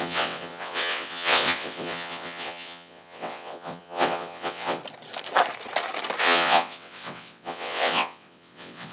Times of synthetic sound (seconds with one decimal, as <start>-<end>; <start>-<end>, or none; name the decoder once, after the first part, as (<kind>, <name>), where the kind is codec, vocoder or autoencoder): 0.0-4.8 (vocoder, WaveNeXt); 6.2-8.9